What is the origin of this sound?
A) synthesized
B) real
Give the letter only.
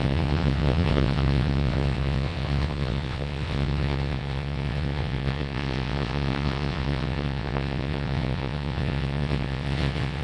A